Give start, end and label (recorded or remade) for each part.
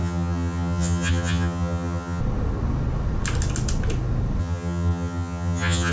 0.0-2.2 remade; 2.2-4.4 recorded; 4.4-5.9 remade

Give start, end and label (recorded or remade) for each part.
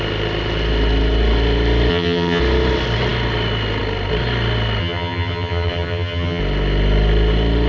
0.0-1.9 recorded; 1.9-2.4 remade; 2.4-4.8 recorded; 4.8-6.4 remade; 6.4-7.7 recorded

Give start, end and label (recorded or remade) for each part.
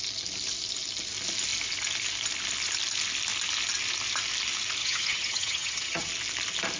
0.0-4.8 recorded; 4.8-6.1 remade; 6.1-6.8 recorded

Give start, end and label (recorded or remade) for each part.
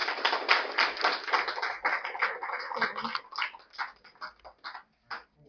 0.0-5.5 recorded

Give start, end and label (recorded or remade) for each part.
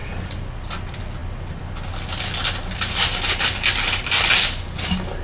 0.0-5.2 recorded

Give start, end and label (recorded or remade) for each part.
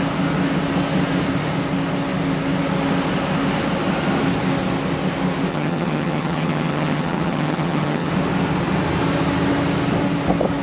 0.0-5.5 recorded; 5.5-8.1 remade; 8.1-10.6 recorded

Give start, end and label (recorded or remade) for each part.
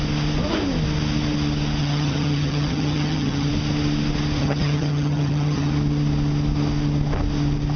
0.0-1.8 recorded; 1.8-3.5 remade; 3.5-4.4 recorded; 4.4-5.7 remade; 5.7-7.8 recorded